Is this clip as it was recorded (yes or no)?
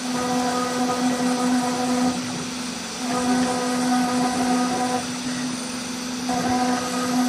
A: yes